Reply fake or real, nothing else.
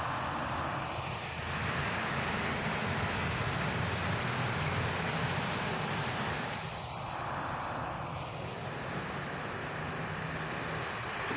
real